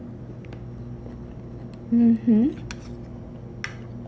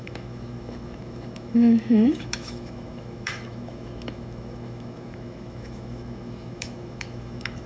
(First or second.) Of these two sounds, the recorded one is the first